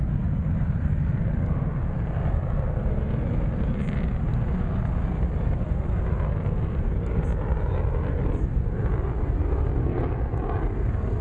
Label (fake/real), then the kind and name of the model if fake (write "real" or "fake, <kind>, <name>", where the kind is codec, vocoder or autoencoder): real